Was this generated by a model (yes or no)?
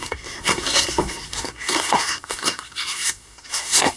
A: yes